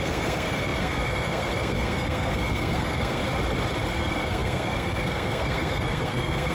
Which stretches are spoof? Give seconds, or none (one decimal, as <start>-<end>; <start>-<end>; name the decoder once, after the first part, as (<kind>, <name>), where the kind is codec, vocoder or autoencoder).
0.0-3.2 (codec, SNAC); 3.9-6.5